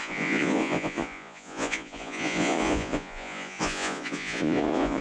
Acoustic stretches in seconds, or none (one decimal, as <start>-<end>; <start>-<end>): none